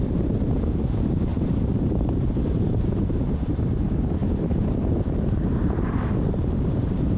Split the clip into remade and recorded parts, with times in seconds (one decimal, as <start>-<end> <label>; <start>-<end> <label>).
0.0-7.2 remade